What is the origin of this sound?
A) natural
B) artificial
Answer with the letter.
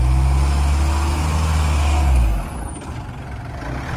A